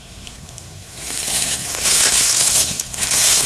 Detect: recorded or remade remade